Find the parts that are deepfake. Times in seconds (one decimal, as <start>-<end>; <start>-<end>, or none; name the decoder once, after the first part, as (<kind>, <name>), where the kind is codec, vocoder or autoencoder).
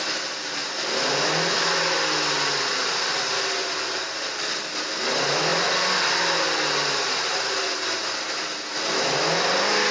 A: none